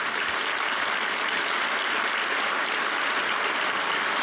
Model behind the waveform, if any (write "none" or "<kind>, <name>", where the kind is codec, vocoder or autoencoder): none